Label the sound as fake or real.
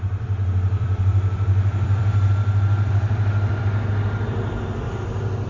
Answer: fake